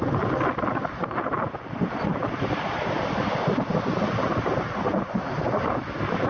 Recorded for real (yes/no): yes